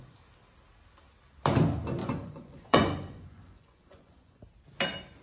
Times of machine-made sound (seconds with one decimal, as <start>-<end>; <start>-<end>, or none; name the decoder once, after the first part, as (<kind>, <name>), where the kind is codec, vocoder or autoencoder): 2.0-4.4 (vocoder, Vocos)